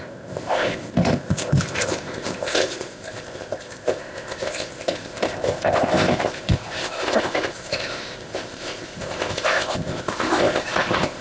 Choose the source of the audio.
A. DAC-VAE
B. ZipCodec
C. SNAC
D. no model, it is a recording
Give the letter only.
B